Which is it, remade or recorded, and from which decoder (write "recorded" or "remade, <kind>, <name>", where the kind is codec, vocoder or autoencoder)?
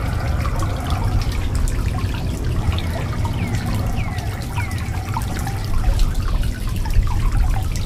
recorded